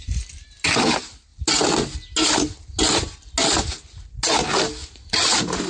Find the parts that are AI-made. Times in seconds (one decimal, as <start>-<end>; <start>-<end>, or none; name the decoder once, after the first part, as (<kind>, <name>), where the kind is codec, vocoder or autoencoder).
4.8-5.7 (vocoder, BigVGAN v2)